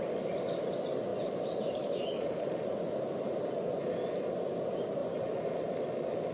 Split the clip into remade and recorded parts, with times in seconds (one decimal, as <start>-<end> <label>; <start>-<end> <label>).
0.0-1.1 recorded; 1.1-4.6 remade; 4.6-5.0 recorded; 5.0-5.7 remade; 5.7-6.3 recorded